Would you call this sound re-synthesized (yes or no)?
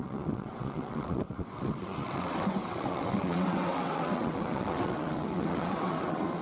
yes